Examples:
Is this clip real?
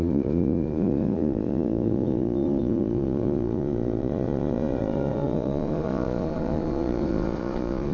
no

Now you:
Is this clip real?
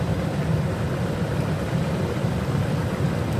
no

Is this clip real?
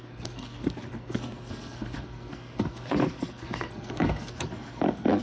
no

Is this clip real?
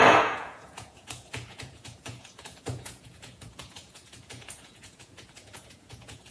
no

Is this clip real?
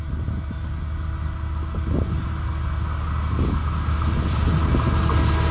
yes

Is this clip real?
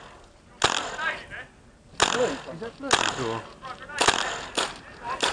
yes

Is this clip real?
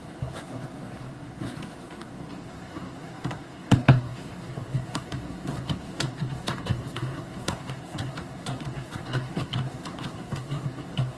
no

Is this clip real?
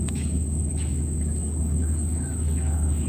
no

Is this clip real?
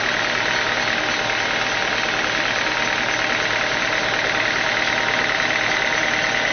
yes